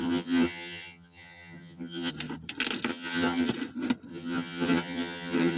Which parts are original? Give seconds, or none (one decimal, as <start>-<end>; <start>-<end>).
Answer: 2.1-2.9; 3.5-4.1